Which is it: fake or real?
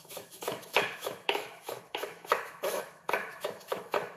fake